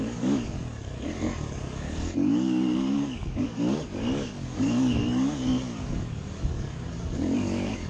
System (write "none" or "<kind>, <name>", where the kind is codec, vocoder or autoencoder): codec, DAC